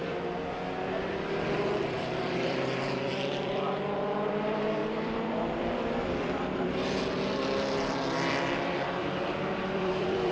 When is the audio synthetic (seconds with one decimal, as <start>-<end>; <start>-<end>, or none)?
1.1-10.3

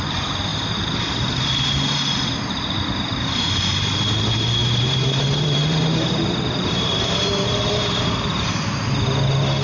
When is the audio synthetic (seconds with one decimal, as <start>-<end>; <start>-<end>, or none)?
4.6-8.5

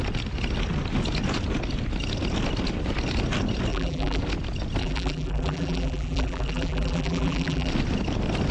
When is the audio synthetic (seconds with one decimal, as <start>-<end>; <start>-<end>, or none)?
3.7-4.2; 4.8-7.7

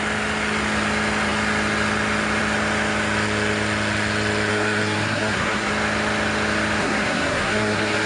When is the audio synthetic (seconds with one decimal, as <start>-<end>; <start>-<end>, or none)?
4.5-5.7; 6.8-8.1

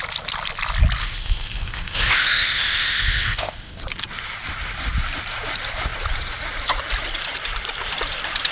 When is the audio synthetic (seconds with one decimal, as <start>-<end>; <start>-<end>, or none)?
1.0-3.8

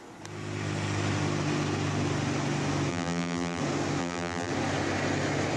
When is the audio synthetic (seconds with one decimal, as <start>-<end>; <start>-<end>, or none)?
2.9-3.6; 4.0-4.5

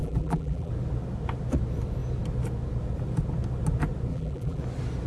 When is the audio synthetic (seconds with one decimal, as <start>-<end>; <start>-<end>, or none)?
0.0-0.7; 4.1-4.6